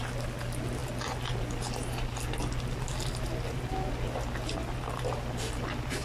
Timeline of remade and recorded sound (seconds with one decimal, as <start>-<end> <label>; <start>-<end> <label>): 0.0-0.8 recorded; 0.8-1.4 remade; 1.4-6.0 recorded